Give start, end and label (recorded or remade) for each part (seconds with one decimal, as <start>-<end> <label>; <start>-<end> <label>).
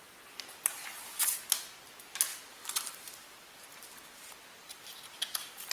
0.0-2.3 recorded; 2.3-4.2 remade; 4.2-5.7 recorded